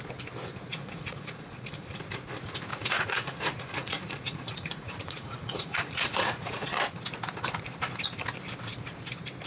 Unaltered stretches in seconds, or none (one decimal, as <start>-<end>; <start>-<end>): 0.0-0.7; 2.0-2.7; 6.8-9.5